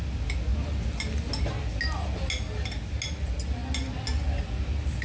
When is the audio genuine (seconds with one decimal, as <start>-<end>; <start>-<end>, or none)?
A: 0.0-5.0